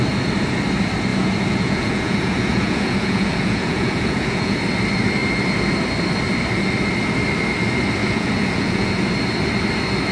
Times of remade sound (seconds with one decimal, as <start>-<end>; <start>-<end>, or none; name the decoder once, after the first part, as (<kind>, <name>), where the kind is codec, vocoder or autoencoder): 1.1-4.6 (vocoder, Vocos); 8.0-8.9

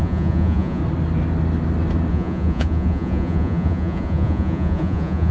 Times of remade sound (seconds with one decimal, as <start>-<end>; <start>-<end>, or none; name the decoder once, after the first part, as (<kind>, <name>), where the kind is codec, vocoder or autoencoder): 0.0-0.8 (vocoder, Vocos); 2.1-5.3

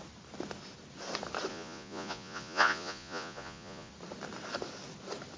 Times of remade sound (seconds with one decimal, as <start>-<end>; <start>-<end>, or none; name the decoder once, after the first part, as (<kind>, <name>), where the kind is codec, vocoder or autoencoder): 1.5-3.9 (vocoder, Vocos)